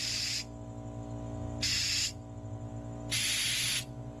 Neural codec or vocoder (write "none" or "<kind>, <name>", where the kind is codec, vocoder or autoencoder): none